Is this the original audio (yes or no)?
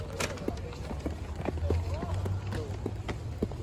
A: yes